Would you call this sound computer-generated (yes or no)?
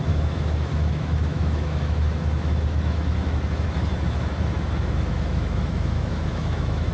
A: yes